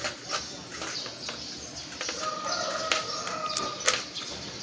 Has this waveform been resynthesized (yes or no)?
no